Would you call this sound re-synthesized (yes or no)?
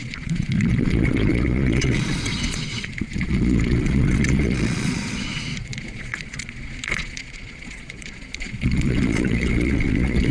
yes